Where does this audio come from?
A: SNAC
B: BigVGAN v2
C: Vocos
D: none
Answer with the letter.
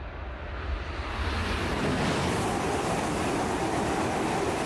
D